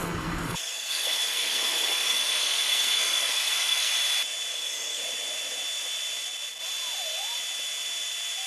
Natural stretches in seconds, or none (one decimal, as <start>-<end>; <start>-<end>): 3.9-4.5; 5.0-8.5